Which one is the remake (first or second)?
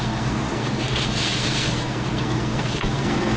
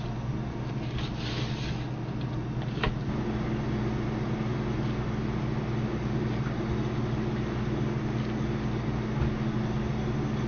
first